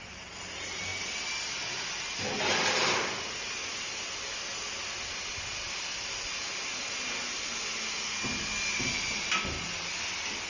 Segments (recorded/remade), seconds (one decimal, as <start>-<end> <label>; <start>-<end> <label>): 0.0-10.5 recorded